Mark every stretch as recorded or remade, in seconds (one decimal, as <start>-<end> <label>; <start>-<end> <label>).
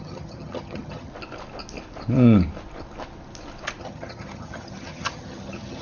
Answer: 0.0-1.1 remade; 1.1-3.8 recorded; 3.8-5.8 remade